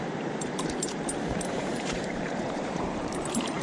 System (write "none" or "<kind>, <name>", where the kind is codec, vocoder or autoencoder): vocoder, BigVGAN v2